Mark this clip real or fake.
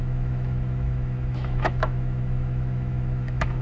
fake